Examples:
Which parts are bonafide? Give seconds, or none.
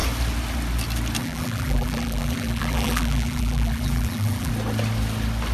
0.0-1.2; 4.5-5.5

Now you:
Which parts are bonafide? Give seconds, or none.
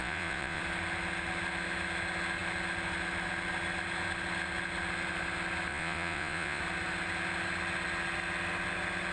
0.6-5.7; 6.6-9.1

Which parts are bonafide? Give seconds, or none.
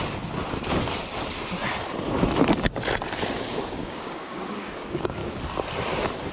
0.0-3.5; 5.2-6.3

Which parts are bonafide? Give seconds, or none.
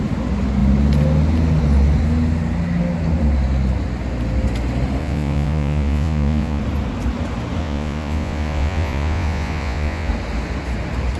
0.0-5.0; 6.6-7.6; 10.1-11.2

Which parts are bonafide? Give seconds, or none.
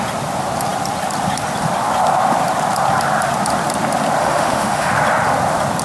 0.0-4.2; 4.9-5.8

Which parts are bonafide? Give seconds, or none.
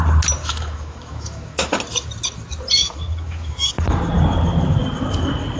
0.0-0.4; 1.7-2.8; 3.7-5.6